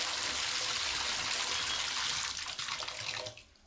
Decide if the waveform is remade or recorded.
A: recorded